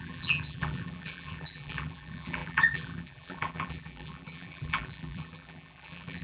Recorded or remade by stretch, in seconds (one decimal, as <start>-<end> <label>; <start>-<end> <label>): 0.0-6.2 remade